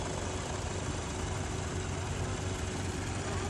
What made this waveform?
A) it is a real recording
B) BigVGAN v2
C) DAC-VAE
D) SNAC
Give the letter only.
A